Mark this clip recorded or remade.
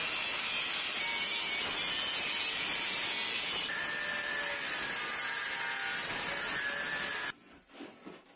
recorded